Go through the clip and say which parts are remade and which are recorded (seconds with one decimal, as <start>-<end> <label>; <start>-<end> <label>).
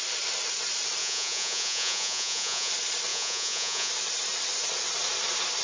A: 0.0-1.0 recorded; 1.0-2.7 remade; 2.7-3.1 recorded; 3.1-3.9 remade; 3.9-5.6 recorded